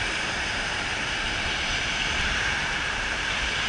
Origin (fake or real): fake